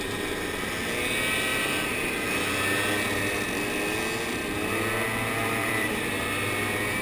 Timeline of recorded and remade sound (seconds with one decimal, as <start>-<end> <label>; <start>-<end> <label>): 0.0-1.5 recorded; 1.5-2.1 remade; 2.1-5.4 recorded; 5.4-6.1 remade; 6.1-7.0 recorded